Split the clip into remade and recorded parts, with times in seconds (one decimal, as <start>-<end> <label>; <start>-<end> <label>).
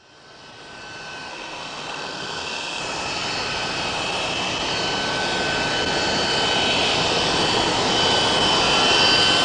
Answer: 0.0-1.3 recorded; 1.3-2.8 remade; 2.8-9.4 recorded